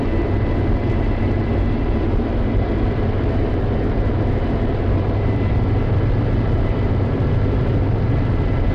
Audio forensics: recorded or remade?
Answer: remade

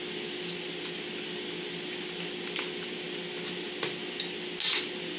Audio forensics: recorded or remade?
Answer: recorded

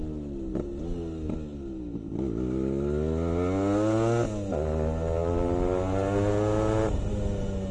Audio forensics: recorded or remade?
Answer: recorded